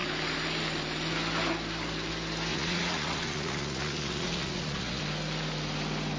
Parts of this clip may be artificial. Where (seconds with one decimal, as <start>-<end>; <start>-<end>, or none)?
2.5-5.0